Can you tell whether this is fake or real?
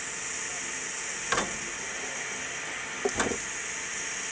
real